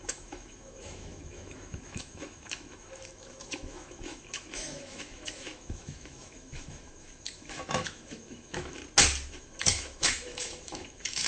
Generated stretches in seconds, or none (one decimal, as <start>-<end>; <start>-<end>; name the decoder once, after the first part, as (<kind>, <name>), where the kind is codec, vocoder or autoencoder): 0.0-8.8 (autoencoder, DAC-VAE); 9.3-11.3